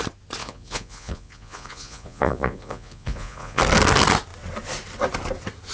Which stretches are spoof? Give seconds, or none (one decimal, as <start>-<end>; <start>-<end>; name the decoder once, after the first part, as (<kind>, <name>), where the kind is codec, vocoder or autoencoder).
0.4-3.6 (vocoder, Vocos)